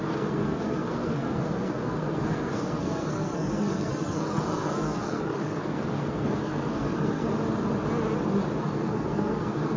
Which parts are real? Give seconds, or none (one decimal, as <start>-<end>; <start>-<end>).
7.3-8.6